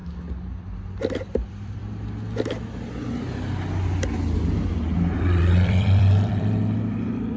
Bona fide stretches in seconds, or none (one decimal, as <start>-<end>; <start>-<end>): 1.8-4.7